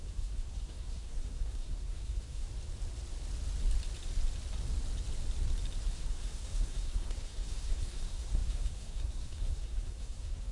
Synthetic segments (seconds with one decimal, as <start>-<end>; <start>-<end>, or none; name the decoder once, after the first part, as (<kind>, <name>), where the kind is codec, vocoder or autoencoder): 0.0-2.5 (codec, SNAC); 5.9-10.5